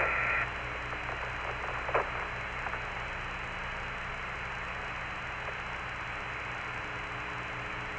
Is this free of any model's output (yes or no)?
yes